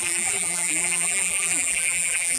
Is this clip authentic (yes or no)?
no